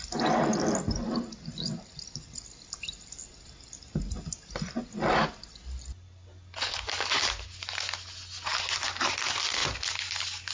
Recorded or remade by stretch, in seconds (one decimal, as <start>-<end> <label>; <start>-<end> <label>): 0.0-10.5 recorded